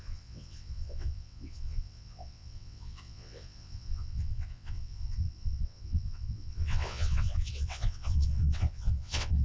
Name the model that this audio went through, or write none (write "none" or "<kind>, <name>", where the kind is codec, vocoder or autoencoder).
vocoder, WaveNeXt